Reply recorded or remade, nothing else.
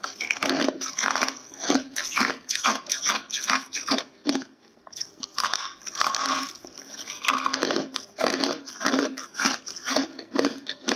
remade